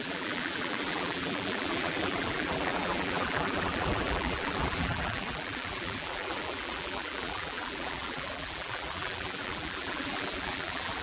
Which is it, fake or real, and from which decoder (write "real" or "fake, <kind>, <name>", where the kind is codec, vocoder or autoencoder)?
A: fake, vocoder, BigVGAN v2